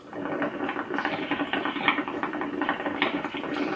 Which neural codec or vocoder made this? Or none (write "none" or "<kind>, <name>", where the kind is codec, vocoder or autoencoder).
none